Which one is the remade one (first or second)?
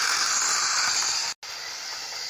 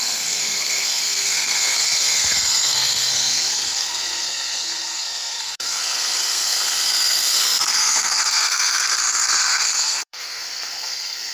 second